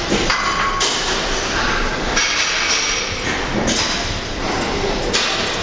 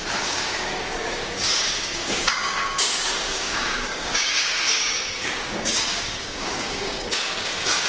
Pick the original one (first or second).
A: first